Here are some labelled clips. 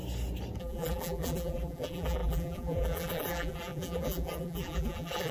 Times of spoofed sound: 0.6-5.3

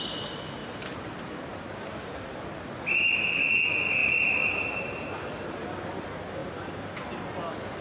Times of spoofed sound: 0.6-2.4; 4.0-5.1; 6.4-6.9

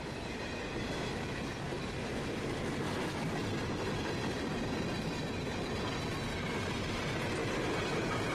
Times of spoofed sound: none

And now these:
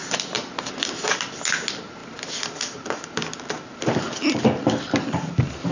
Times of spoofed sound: 2.0-5.7

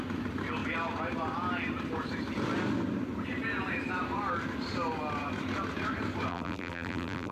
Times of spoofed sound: 6.3-7.3

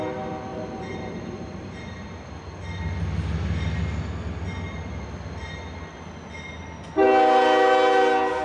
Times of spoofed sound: 0.5-2.0

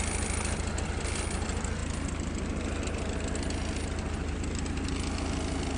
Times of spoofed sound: none

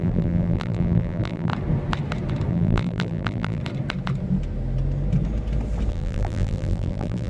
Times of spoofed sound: 0.0-1.5; 2.5-3.6; 5.9-7.3